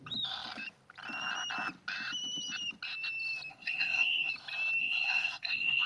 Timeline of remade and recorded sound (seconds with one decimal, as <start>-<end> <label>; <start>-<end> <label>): 0.0-3.5 recorded; 3.5-4.3 remade; 4.3-4.8 recorded; 4.8-5.9 remade